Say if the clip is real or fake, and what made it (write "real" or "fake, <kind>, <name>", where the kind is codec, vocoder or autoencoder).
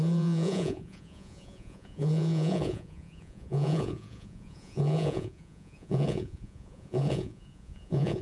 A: fake, vocoder, Vocos